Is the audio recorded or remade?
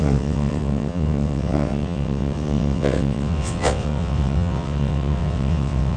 remade